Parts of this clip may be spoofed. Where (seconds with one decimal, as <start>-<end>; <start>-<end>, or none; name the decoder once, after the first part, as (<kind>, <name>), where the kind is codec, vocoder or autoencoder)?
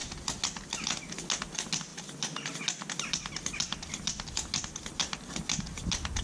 none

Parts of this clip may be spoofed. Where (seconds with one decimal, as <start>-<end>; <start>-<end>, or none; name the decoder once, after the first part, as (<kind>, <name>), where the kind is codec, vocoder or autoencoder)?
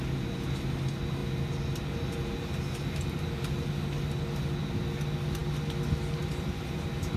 none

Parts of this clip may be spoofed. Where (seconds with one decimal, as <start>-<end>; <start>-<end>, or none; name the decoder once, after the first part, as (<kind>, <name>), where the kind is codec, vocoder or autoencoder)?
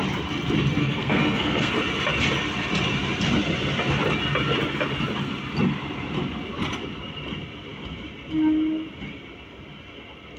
0.8-1.7 (codec, SNAC)